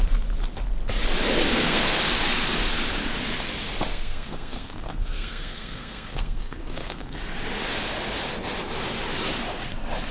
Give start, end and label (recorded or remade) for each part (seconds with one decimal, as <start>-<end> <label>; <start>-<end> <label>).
0.0-1.5 recorded; 1.5-2.0 remade; 2.0-3.9 recorded; 3.9-7.2 remade; 7.2-10.1 recorded